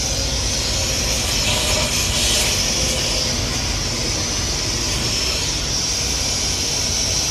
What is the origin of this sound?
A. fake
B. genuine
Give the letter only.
B